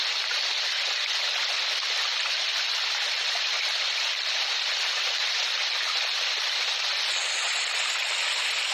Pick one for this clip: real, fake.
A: real